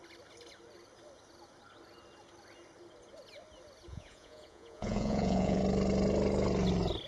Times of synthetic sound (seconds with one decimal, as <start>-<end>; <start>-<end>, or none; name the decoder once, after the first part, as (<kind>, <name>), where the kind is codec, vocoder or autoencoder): 3.9-5.6 (vocoder, Vocos)